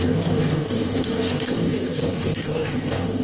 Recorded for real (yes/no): no